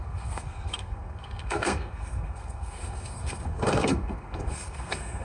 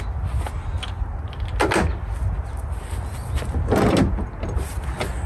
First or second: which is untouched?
second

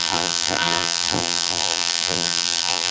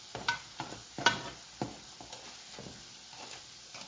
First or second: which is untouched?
second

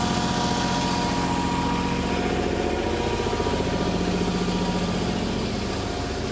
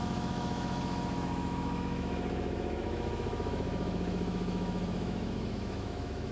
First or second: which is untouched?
first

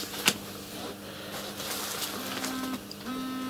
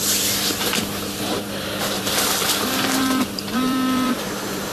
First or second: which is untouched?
first